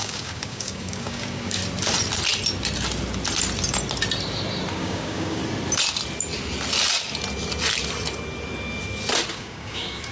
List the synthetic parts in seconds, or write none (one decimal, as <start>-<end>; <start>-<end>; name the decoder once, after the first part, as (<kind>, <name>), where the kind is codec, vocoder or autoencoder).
0.0-1.6 (codec, DAC); 4.7-5.4; 9.3-10.1